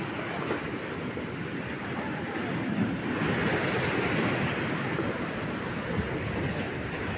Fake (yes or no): no